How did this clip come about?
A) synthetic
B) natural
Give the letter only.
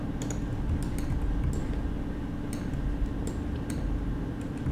B